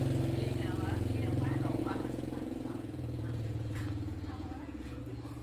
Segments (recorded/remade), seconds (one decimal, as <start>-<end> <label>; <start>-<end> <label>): 0.0-1.8 recorded; 1.8-5.0 remade; 5.0-5.4 recorded